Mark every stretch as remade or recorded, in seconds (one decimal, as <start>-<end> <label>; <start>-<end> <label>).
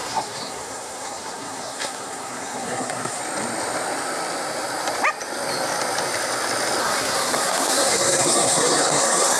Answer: 0.0-3.2 remade; 3.2-6.8 recorded; 6.8-9.4 remade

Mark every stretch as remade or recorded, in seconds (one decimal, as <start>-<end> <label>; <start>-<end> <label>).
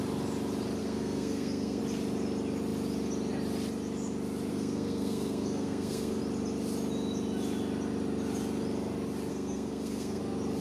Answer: 0.0-0.8 recorded; 0.8-1.8 remade; 1.8-4.5 recorded; 4.5-6.2 remade; 6.2-9.3 recorded; 9.3-10.2 remade; 10.2-10.6 recorded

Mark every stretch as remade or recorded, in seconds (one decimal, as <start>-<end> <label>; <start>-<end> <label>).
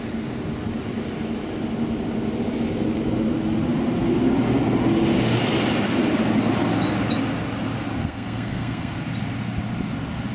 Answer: 0.0-8.0 recorded; 8.0-9.0 remade; 9.0-10.3 recorded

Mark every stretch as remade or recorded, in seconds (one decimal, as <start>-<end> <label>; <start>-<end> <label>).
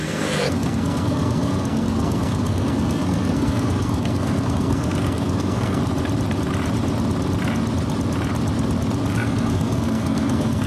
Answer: 0.0-5.8 remade; 5.8-9.1 recorded; 9.1-10.7 remade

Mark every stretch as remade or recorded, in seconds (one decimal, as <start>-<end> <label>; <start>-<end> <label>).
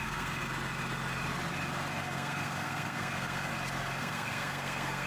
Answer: 0.0-0.4 remade; 0.4-1.9 recorded; 1.9-3.5 remade; 3.5-4.0 recorded; 4.0-5.1 remade